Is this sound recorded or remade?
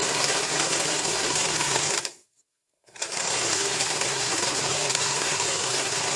remade